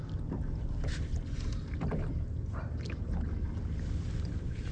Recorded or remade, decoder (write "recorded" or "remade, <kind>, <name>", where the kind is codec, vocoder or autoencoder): recorded